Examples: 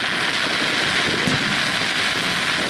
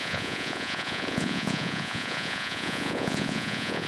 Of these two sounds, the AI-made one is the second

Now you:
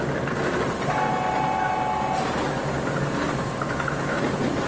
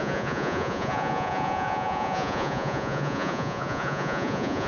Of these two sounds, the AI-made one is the second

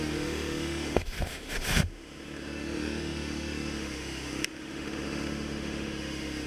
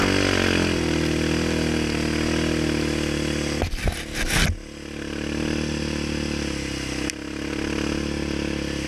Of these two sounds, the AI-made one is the first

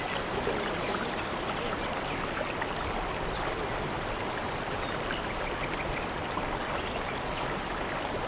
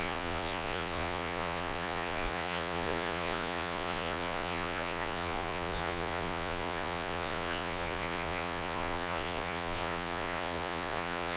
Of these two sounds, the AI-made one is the second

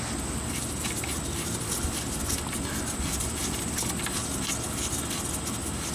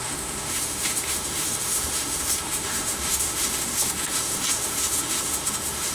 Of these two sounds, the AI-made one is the second